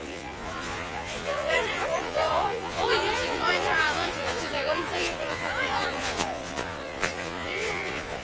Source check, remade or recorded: remade